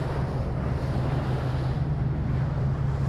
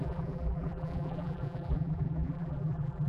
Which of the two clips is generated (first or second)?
second